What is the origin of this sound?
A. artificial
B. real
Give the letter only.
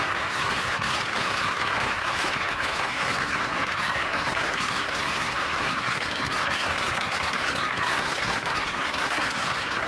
A